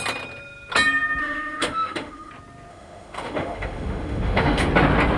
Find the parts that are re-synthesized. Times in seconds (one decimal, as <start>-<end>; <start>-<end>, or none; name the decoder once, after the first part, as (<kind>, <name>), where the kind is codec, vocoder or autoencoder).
1.2-2.3 (autoencoder, DAC-VAE); 2.7-4.7